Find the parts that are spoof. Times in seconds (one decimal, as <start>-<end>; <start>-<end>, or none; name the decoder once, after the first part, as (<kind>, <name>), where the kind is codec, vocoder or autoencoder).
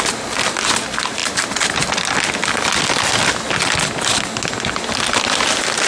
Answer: none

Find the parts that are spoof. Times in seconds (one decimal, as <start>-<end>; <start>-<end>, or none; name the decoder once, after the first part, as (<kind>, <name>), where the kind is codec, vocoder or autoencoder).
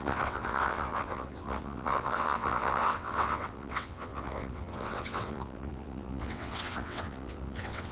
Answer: 0.0-7.9 (vocoder, WaveNeXt)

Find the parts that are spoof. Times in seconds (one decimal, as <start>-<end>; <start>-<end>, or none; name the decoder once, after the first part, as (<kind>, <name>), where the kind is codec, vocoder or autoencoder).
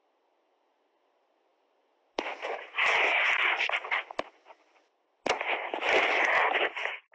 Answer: none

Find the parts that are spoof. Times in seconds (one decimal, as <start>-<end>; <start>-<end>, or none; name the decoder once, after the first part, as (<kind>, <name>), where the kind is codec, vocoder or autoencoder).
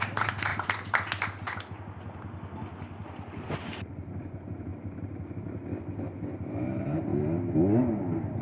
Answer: 0.0-0.5 (vocoder, BigVGAN v2); 3.6-7.1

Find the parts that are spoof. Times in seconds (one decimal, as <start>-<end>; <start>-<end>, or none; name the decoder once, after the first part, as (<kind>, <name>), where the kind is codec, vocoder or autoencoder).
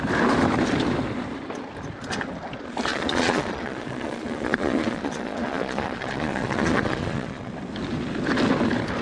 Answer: 2.9-7.5 (vocoder, Vocos)